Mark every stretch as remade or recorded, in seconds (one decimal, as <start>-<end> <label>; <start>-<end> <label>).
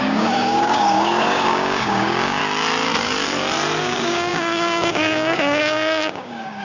0.0-2.4 remade; 2.4-3.8 recorded; 3.8-6.6 remade